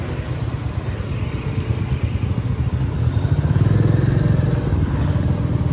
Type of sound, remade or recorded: recorded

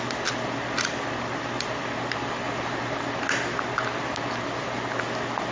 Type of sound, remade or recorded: recorded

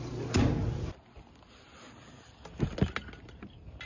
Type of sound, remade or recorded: recorded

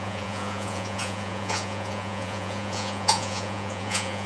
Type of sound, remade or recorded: remade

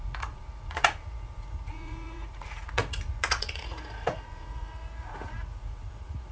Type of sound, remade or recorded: remade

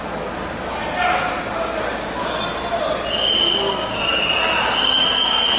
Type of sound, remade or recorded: recorded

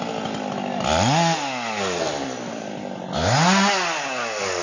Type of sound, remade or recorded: recorded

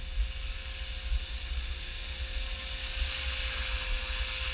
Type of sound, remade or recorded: recorded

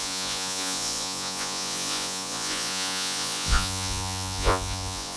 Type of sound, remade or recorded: remade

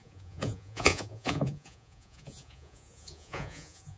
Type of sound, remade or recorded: remade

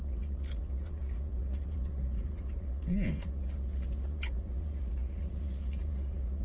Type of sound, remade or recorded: remade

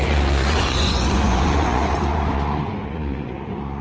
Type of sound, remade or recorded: remade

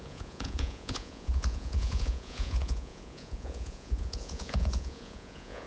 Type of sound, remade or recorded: remade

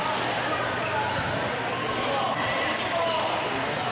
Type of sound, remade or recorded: recorded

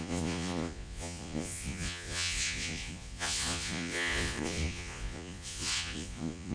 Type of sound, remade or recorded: remade